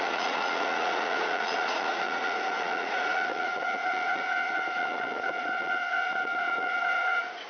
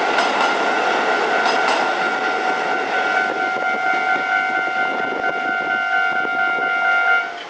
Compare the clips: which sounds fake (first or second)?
first